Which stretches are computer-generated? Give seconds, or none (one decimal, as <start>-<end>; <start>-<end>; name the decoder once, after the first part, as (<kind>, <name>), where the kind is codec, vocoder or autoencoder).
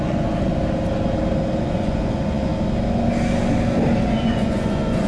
0.0-0.5 (vocoder, Vocos); 1.6-2.5; 4.0-5.1